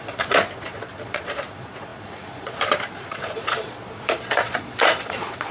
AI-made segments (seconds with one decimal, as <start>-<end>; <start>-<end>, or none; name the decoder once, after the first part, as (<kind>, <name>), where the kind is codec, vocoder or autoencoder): 0.0-5.5 (vocoder, Vocos)